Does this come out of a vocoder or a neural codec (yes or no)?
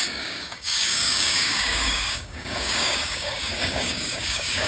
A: yes